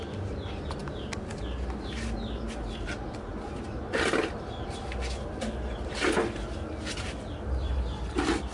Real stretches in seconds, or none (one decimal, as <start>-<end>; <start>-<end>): 0.0-8.5